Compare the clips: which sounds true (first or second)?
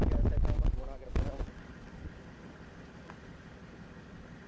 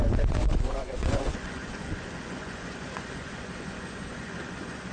first